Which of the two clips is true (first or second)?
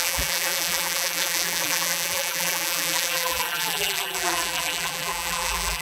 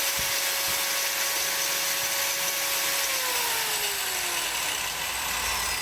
second